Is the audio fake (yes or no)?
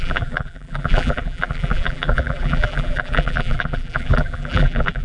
yes